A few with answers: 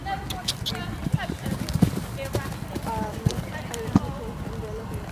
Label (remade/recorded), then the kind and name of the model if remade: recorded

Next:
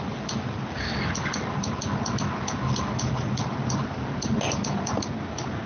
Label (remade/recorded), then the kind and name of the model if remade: recorded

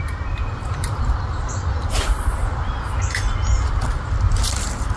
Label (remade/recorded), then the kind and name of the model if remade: recorded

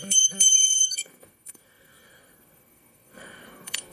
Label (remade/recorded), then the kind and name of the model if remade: remade, codec, SNAC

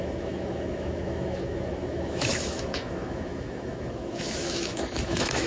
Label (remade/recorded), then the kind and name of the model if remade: remade, autoencoder, DAC-VAE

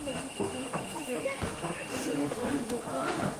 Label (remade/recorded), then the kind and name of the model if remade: remade, autoencoder, DAC-VAE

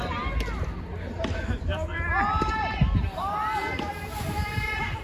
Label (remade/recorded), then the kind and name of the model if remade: recorded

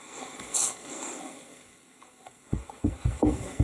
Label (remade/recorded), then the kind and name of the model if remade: remade, codec, SNAC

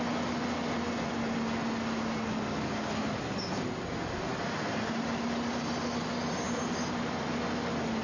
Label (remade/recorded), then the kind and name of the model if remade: recorded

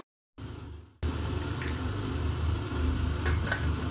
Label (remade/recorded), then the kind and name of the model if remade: recorded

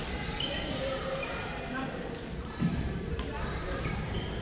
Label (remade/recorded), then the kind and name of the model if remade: remade, vocoder, BigVGAN v2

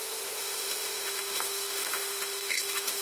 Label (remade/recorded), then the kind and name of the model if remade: remade, autoencoder, DAC-VAE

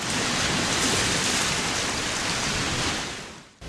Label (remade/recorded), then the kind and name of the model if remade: recorded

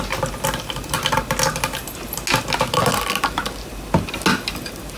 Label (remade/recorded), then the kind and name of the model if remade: recorded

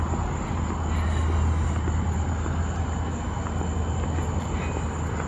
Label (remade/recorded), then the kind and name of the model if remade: recorded